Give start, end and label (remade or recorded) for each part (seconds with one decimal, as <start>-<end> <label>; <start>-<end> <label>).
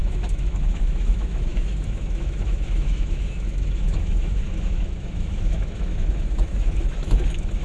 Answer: 0.0-7.6 remade